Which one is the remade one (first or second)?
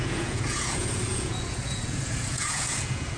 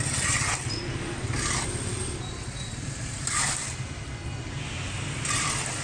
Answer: first